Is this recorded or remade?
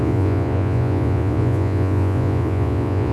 remade